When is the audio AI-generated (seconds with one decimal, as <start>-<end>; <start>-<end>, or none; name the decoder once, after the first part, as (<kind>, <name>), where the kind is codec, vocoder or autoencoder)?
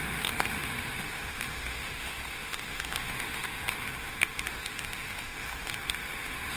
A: 0.0-6.6 (autoencoder, DAC-VAE)